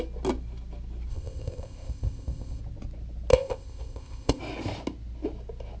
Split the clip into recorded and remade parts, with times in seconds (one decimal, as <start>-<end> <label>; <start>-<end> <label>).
0.0-1.1 recorded; 1.1-2.6 remade; 2.6-3.3 recorded; 3.3-4.4 remade; 4.4-5.8 recorded